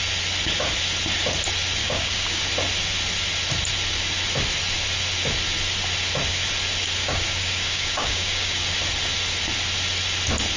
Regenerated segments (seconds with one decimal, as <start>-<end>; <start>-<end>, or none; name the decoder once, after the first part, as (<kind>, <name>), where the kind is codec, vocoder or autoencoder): 1.8-2.4 (codec, DAC); 7.0-8.6